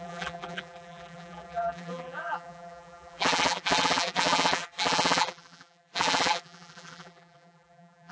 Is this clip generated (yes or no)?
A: yes